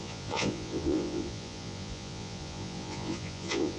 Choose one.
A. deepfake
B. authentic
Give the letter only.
A